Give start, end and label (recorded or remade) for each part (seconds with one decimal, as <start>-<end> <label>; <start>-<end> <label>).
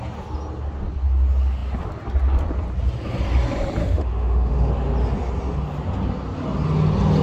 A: 0.0-3.8 recorded; 3.8-4.7 remade; 4.7-7.2 recorded